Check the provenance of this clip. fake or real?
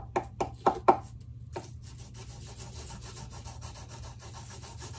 real